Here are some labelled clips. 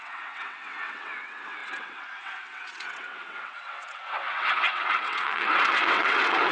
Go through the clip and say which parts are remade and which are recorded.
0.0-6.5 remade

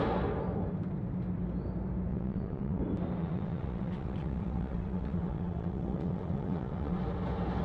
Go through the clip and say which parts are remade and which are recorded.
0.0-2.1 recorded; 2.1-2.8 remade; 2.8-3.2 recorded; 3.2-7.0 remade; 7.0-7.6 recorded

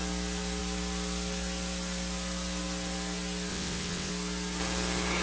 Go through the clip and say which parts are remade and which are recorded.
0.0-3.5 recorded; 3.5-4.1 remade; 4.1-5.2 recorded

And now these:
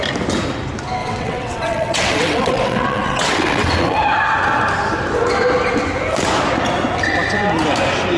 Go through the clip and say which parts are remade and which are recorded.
0.0-1.0 recorded; 1.0-4.0 remade; 4.0-8.2 recorded